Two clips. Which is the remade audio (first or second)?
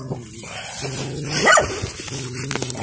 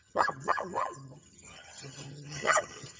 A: second